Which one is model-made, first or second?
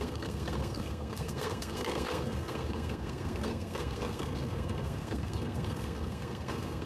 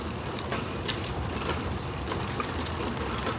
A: first